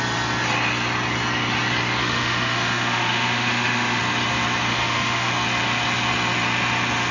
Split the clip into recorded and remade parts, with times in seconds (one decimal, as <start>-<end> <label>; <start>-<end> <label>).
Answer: 0.0-2.0 recorded; 2.0-4.0 remade; 4.0-4.7 recorded; 4.7-5.3 remade; 5.3-7.1 recorded

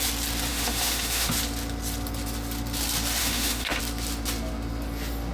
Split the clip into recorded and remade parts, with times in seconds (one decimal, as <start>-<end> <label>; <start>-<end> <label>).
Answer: 0.0-0.5 recorded; 0.5-1.3 remade; 1.3-3.2 recorded; 3.2-3.8 remade; 3.8-5.3 recorded

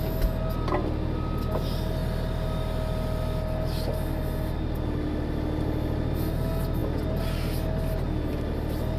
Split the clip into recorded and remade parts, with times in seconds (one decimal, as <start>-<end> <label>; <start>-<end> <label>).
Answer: 0.0-9.0 recorded

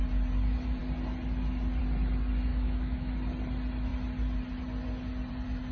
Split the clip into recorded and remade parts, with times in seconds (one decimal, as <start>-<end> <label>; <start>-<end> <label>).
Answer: 0.0-2.5 recorded; 2.5-3.1 remade; 3.1-5.7 recorded

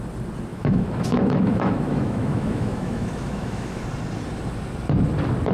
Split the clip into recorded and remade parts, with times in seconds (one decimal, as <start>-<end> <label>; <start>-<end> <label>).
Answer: 0.0-0.5 recorded; 0.5-3.8 remade; 3.8-5.5 recorded